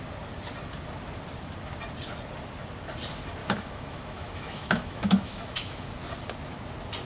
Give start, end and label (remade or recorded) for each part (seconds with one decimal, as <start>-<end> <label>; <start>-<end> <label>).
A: 0.0-3.4 recorded; 3.4-5.9 remade; 5.9-7.0 recorded